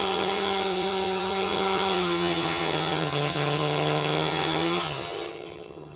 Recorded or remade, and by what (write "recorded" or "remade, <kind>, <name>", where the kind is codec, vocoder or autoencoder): remade, vocoder, HiFi-GAN